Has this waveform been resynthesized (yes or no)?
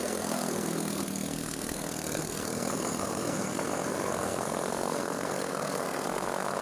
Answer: yes